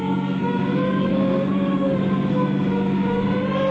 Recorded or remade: remade